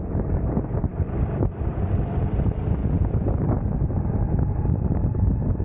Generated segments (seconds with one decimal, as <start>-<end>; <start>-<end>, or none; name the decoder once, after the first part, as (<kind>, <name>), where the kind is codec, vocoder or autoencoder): 2.8-3.4 (vocoder, Vocos)